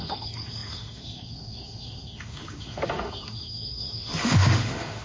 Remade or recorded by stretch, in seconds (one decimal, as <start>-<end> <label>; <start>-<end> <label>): 0.0-5.0 remade